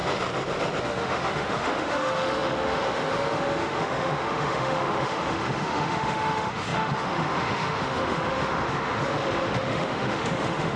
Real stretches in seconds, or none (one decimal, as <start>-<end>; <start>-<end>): 0.0-0.8